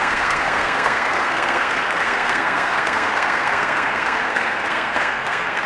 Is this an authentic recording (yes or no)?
no